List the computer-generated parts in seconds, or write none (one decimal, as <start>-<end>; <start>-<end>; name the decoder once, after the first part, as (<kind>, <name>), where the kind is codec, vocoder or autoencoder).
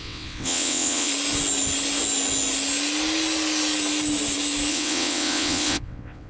0.0-1.1 (vocoder, WaveNeXt); 4.7-6.3